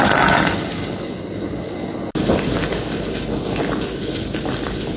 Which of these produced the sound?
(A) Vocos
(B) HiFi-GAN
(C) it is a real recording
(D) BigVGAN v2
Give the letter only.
C